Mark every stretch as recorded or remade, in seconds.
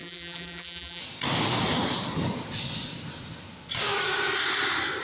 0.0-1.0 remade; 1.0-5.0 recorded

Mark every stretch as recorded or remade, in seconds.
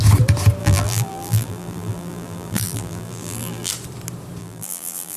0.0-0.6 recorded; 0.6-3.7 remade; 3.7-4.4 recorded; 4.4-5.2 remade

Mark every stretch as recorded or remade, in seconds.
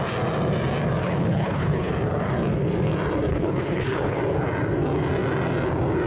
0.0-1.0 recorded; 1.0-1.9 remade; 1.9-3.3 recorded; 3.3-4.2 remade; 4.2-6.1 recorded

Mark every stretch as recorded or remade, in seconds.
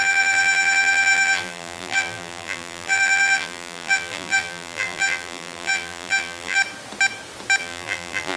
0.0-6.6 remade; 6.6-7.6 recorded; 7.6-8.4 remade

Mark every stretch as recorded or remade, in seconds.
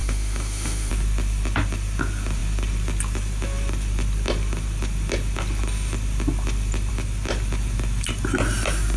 0.0-0.9 remade; 0.9-9.0 recorded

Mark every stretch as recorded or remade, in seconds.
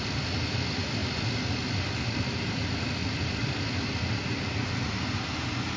0.0-5.8 recorded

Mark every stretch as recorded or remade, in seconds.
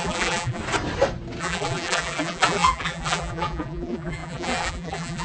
0.0-0.6 remade; 0.6-1.4 recorded; 1.4-5.2 remade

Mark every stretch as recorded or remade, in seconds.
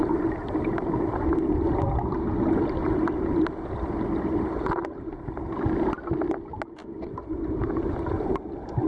0.0-8.9 recorded